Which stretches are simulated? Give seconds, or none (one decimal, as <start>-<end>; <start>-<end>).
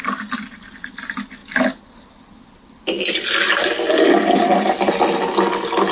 none